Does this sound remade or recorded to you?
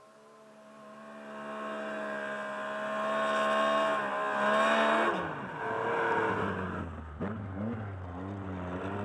recorded